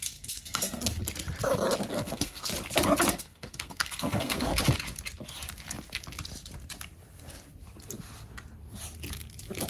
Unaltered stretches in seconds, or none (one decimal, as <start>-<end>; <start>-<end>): 0.8-1.9; 2.5-3.1; 4.5-9.7